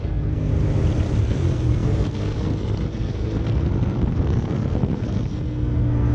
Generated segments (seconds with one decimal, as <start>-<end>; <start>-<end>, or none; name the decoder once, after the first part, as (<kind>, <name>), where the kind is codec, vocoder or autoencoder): 0.0-0.5 (codec, SNAC); 1.2-6.1

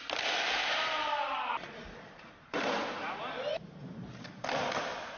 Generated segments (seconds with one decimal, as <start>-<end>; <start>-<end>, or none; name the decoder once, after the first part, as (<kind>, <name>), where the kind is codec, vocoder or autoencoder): 0.6-2.7 (vocoder, BigVGAN v2); 3.5-4.2